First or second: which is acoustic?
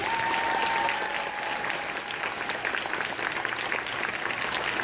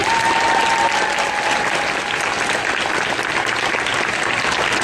first